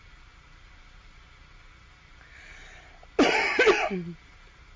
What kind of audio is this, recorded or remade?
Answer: recorded